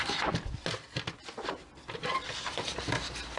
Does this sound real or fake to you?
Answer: real